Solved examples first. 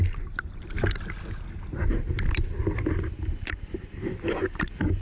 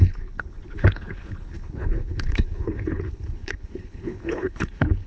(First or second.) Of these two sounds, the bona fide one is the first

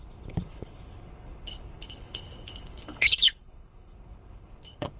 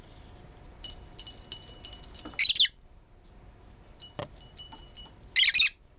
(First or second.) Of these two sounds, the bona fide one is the second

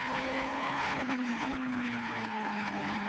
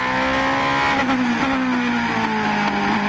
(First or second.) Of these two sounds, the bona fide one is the second